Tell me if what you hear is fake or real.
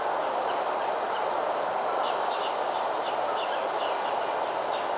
real